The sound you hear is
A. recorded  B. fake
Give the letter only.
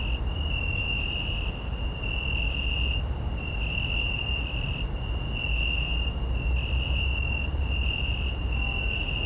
A